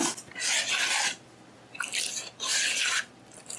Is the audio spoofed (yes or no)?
no